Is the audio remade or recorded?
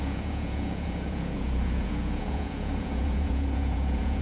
remade